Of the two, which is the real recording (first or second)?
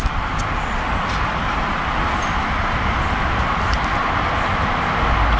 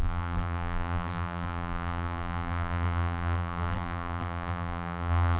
first